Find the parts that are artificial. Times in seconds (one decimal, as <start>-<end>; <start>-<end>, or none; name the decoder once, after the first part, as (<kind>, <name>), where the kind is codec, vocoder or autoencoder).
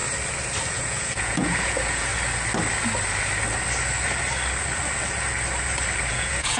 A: 0.7-2.1 (vocoder, Vocos); 6.1-6.6